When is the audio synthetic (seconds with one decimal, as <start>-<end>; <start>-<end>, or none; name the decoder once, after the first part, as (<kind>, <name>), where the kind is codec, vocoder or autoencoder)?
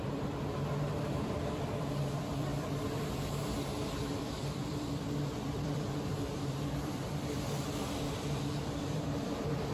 0.0-9.7 (vocoder, BigVGAN v2)